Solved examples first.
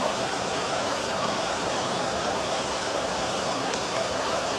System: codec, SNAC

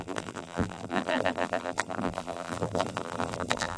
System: vocoder, BigVGAN v2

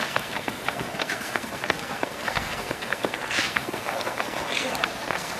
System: codec, SNAC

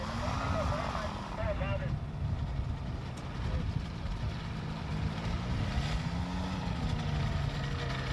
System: none